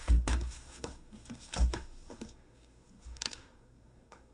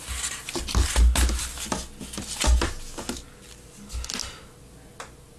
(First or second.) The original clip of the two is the second